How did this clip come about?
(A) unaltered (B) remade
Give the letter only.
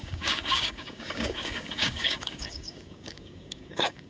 B